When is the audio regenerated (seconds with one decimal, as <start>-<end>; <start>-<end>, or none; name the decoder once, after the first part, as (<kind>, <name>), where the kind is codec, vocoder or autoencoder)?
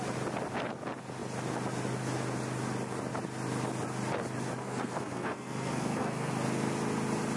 4.6-6.3 (codec, SNAC)